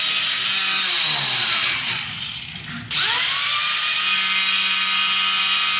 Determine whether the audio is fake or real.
real